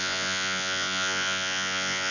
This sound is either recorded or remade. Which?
remade